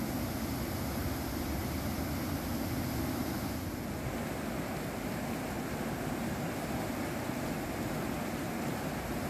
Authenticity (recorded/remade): recorded